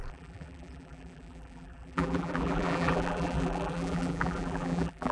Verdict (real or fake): fake